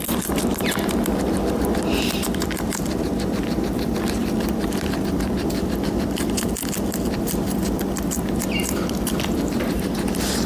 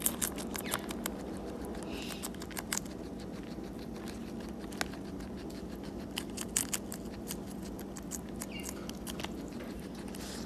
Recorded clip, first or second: second